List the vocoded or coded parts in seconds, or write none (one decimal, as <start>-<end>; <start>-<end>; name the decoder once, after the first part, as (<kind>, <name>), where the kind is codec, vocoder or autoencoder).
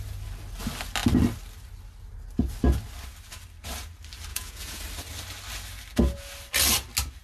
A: 4.3-4.8 (vocoder, Vocos)